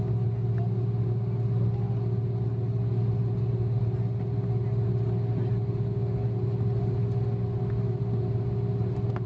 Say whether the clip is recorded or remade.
recorded